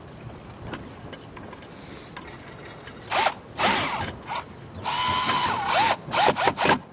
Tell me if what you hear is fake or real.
real